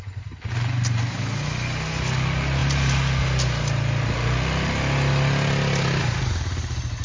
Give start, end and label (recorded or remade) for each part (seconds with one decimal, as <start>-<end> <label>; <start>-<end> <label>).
0.0-7.0 recorded